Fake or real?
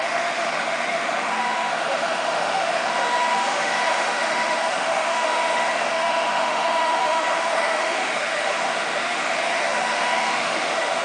fake